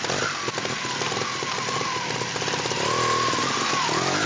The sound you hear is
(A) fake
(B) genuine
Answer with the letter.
B